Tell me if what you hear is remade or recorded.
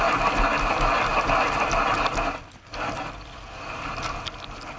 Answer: recorded